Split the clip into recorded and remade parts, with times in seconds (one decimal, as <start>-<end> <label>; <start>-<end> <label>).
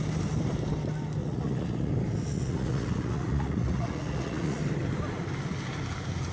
0.0-1.2 recorded; 1.2-1.9 remade; 1.9-2.3 recorded; 2.3-4.6 remade; 4.6-6.3 recorded